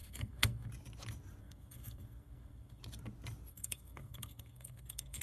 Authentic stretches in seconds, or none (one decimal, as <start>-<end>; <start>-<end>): 0.7-1.4; 2.8-3.5